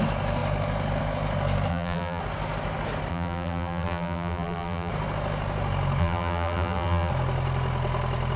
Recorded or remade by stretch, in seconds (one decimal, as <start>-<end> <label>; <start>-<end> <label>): 0.0-1.7 recorded; 1.7-2.2 remade; 2.2-3.1 recorded; 3.1-4.9 remade; 4.9-6.0 recorded; 6.0-7.1 remade; 7.1-8.4 recorded